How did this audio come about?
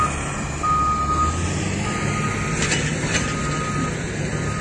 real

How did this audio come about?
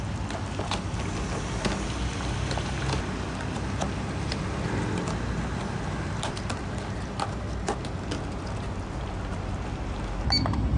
real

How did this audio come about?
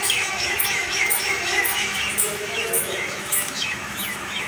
fake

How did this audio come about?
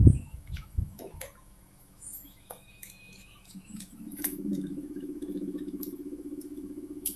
fake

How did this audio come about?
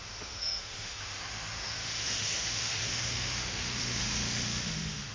fake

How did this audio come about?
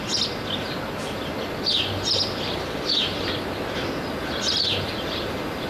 real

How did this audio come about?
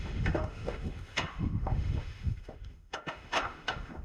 fake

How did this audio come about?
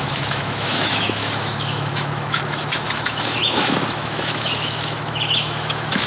fake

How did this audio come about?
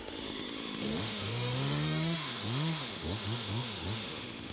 fake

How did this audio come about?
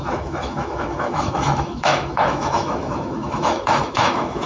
fake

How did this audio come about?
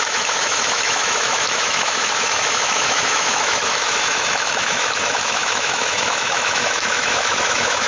fake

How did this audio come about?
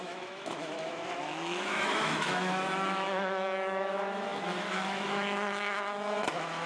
fake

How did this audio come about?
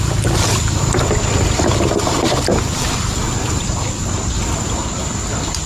real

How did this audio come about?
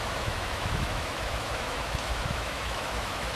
fake